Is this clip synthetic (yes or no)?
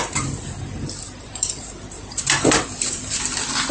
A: yes